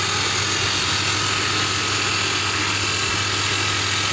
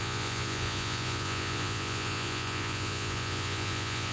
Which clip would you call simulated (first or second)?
second